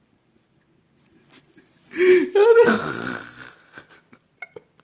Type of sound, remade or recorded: recorded